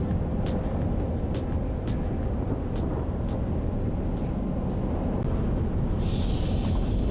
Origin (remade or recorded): recorded